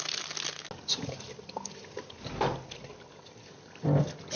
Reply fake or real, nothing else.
real